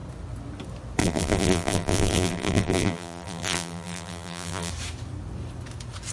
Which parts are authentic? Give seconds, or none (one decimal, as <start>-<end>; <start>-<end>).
0.0-1.0; 4.7-6.1